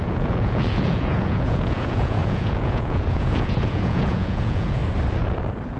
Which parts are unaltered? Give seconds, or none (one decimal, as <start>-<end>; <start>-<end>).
4.8-5.8